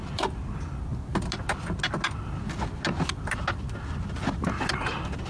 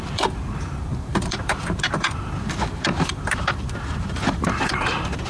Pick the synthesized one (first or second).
second